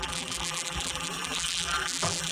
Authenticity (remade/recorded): remade